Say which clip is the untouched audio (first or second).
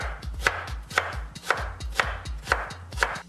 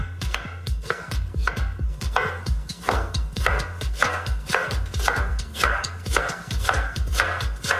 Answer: first